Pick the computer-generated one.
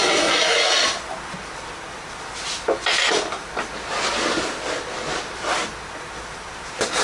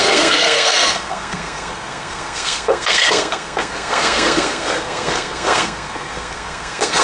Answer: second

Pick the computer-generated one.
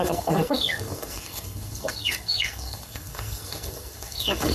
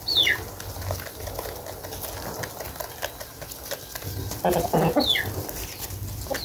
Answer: first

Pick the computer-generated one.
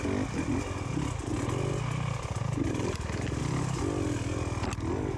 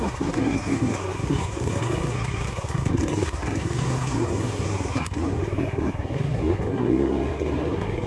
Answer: second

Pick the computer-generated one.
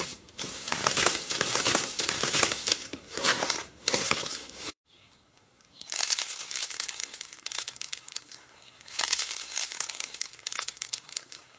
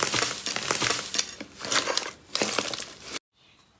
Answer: first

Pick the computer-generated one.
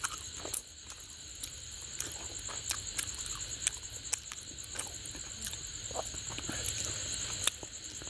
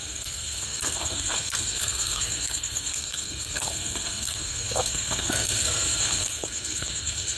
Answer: second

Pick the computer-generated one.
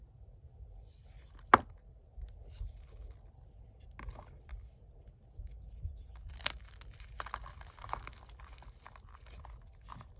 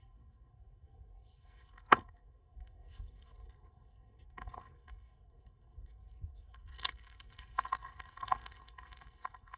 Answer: second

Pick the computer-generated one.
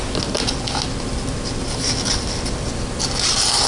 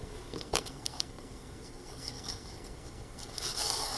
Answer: second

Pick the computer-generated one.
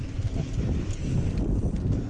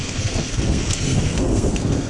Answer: second